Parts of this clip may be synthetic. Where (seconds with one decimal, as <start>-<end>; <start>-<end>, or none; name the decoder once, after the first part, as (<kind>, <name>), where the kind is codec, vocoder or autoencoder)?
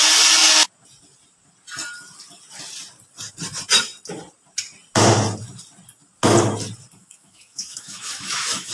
7.0-8.7 (autoencoder, DAC-VAE)